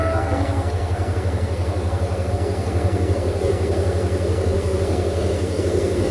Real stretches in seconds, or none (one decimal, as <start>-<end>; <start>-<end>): none